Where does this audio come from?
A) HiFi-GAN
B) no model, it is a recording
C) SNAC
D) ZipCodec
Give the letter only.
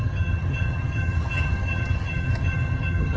A